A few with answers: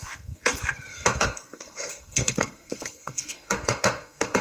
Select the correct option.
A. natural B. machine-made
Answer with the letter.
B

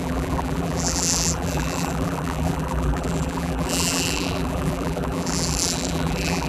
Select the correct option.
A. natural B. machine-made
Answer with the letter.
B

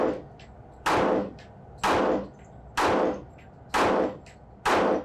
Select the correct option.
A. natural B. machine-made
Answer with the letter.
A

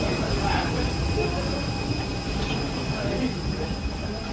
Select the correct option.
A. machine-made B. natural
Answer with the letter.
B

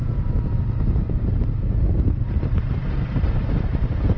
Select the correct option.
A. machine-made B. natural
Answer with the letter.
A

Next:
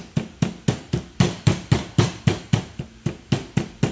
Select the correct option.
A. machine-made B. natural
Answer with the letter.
B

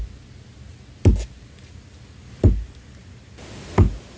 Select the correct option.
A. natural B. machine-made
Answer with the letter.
A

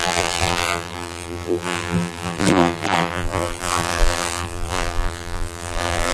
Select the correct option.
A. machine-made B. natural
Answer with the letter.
A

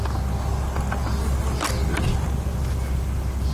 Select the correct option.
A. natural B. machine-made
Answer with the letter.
A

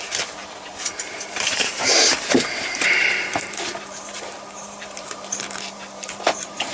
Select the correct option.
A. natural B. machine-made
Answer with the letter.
B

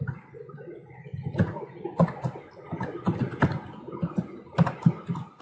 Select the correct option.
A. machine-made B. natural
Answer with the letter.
B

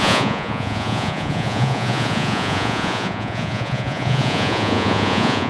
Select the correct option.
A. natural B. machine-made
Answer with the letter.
B